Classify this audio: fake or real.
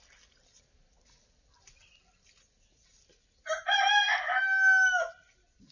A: real